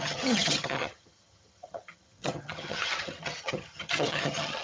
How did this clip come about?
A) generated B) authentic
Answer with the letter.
A